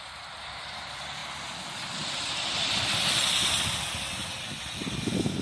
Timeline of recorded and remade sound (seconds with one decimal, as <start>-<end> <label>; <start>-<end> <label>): 0.0-1.2 remade; 1.2-4.4 recorded; 4.4-5.4 remade